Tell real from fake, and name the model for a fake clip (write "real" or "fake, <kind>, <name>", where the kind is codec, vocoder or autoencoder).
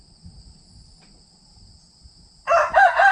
real